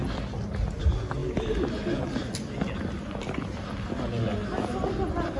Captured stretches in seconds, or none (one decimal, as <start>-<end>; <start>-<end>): 0.0-5.4